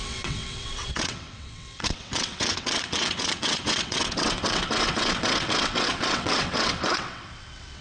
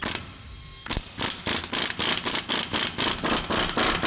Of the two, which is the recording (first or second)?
second